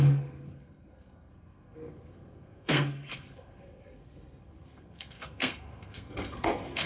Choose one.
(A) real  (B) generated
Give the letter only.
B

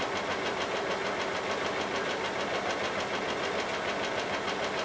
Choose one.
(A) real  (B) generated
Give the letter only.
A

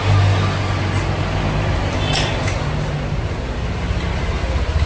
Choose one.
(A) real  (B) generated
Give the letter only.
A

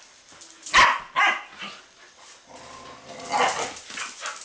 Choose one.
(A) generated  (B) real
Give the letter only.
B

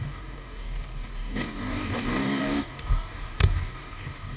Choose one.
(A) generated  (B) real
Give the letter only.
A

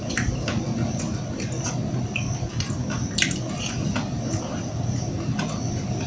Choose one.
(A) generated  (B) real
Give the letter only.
B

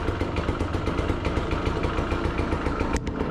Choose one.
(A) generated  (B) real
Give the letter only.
B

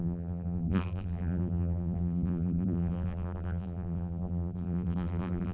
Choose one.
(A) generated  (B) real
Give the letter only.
A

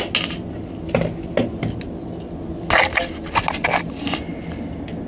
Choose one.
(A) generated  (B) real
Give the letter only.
B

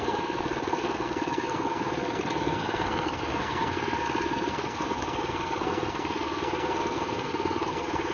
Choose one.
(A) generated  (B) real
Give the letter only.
A